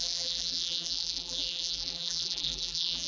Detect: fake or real fake